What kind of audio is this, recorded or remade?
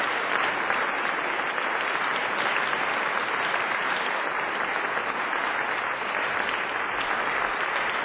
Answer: recorded